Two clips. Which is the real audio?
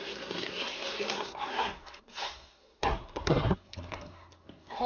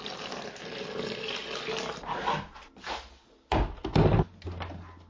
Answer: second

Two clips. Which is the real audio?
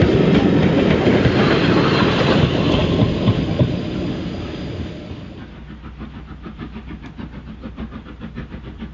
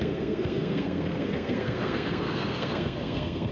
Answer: first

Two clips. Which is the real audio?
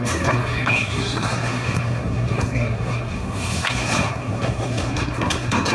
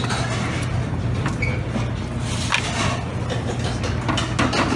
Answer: second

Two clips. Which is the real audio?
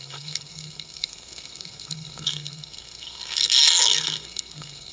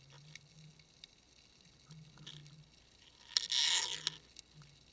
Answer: second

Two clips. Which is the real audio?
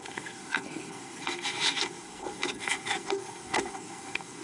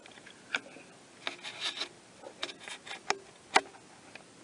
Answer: second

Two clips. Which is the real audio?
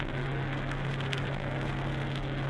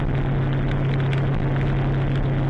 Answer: second